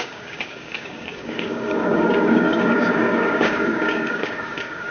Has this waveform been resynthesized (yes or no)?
yes